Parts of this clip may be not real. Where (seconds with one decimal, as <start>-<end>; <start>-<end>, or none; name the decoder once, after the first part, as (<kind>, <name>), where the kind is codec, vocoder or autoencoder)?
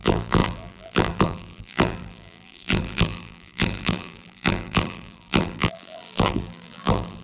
0.0-7.2 (vocoder, BigVGAN v2)